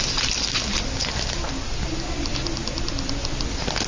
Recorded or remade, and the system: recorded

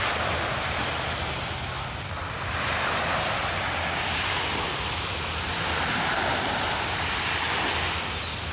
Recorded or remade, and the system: recorded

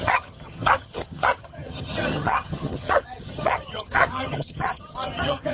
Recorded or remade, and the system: remade, vocoder, HiFi-GAN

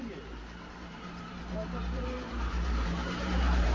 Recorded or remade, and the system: remade, vocoder, BigVGAN v2